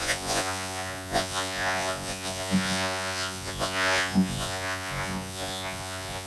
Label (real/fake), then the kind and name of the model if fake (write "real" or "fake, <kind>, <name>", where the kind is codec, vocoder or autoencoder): fake, vocoder, Vocos